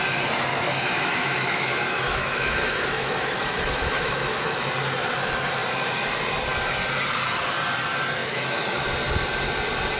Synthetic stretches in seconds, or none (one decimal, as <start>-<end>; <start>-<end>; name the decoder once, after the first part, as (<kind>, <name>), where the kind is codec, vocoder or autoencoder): 0.5-4.7 (autoencoder, DAC-VAE); 8.2-8.8